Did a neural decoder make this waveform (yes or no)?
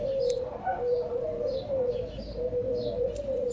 no